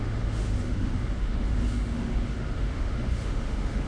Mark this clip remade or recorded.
remade